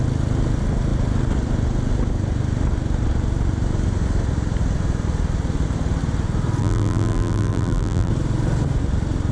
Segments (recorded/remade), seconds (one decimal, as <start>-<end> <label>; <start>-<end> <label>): 0.0-6.6 recorded; 6.6-8.1 remade; 8.1-9.3 recorded

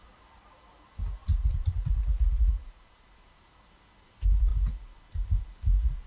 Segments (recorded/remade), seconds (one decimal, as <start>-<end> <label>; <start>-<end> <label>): 0.0-1.2 recorded; 1.2-3.5 remade; 3.5-6.1 recorded